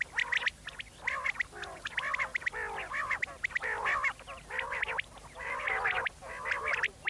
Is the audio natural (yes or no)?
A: yes